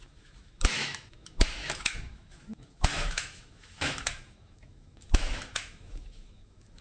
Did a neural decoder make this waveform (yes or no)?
yes